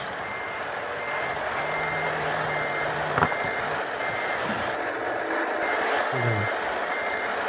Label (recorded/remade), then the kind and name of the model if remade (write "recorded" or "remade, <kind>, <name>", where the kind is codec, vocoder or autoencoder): recorded